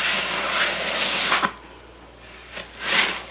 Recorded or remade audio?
recorded